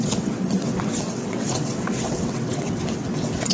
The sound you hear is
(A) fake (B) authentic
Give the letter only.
A